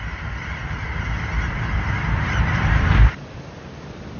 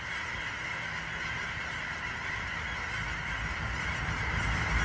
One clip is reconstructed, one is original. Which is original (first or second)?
second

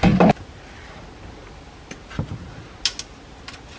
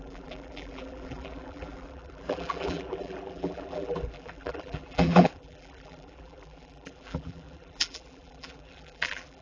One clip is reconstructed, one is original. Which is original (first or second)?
first